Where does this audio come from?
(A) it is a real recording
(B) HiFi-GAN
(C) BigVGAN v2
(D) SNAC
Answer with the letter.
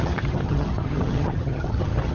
B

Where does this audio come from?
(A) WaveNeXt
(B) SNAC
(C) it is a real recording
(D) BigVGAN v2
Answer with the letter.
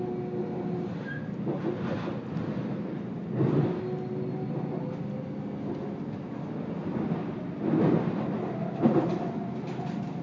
C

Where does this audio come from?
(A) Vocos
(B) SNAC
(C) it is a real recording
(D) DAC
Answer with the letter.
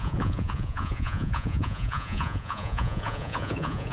A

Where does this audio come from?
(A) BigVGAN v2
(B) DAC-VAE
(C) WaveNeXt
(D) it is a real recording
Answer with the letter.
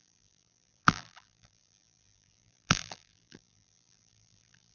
A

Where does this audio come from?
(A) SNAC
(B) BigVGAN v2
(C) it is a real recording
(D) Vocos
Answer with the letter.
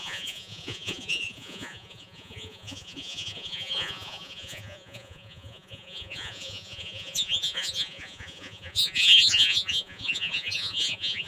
D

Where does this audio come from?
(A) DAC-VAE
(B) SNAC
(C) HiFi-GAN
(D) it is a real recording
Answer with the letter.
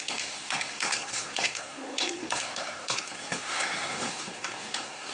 B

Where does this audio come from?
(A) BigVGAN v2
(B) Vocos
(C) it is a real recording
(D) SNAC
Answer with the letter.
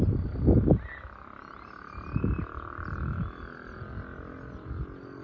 C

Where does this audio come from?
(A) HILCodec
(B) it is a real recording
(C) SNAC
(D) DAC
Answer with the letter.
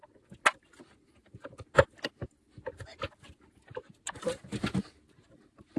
B